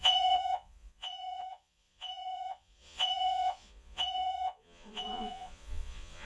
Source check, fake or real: fake